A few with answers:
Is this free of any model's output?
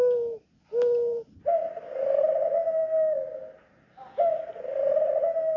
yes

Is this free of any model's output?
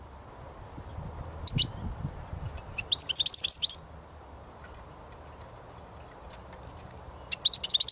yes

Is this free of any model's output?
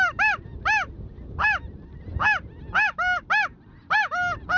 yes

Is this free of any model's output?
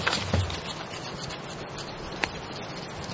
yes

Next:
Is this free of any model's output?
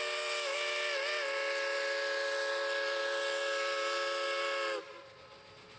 yes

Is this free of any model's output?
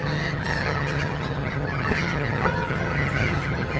no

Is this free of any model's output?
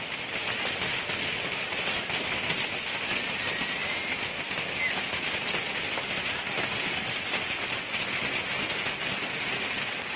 yes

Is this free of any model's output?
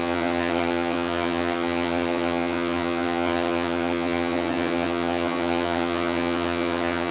no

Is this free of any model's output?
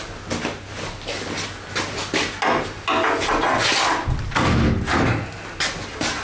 yes